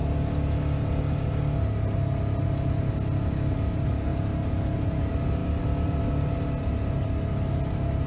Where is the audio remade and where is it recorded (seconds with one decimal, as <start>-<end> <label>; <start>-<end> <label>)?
0.0-5.4 recorded; 5.4-6.0 remade; 6.0-8.1 recorded